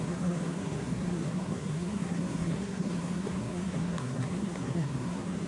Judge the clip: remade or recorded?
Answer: remade